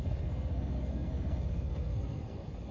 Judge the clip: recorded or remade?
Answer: remade